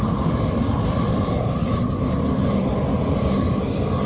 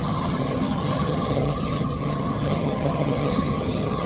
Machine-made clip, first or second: second